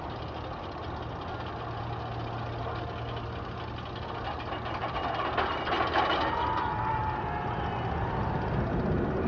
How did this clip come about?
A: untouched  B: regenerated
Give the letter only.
A